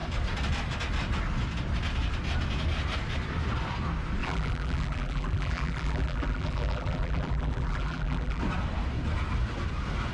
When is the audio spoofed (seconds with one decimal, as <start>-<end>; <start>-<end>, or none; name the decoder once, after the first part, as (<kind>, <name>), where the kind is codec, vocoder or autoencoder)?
4.2-8.4 (vocoder, BigVGAN v2)